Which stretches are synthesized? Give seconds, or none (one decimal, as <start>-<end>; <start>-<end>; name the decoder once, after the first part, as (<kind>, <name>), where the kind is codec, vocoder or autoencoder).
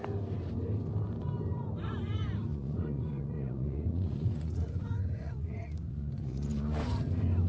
2.5-6.8 (vocoder, Vocos)